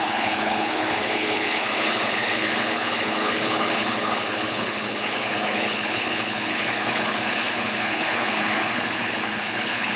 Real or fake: fake